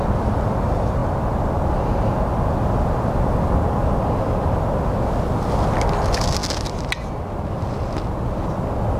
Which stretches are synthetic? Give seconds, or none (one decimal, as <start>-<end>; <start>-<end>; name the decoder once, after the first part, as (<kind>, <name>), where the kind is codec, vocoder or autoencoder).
none

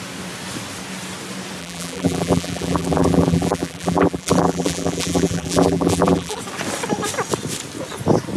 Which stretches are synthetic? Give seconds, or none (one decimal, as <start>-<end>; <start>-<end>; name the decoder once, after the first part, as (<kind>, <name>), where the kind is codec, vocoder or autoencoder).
1.6-6.4 (vocoder, BigVGAN v2)

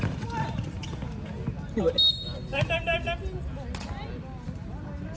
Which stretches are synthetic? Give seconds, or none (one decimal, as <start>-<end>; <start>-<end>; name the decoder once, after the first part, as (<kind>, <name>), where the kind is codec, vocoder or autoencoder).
none

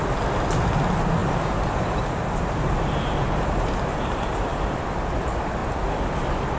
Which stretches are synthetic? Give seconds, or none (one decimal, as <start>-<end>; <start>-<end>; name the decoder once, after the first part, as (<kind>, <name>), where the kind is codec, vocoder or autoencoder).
1.2-5.0 (vocoder, BigVGAN v2)

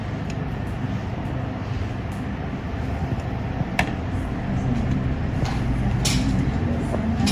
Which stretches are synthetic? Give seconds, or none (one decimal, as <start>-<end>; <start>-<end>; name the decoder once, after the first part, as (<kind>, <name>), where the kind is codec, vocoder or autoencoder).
none

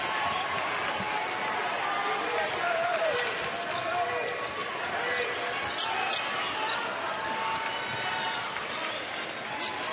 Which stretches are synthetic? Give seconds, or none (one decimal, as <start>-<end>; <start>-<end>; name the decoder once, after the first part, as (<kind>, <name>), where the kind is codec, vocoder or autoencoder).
none

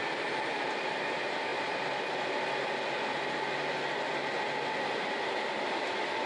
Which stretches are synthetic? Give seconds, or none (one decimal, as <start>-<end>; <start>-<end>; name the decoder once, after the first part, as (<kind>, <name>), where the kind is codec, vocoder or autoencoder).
none

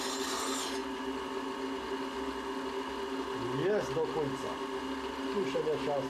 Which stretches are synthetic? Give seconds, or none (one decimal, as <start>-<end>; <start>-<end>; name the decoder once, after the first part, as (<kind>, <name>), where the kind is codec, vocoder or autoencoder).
none